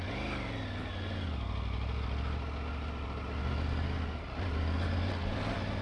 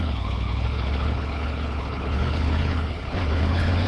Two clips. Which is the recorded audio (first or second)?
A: first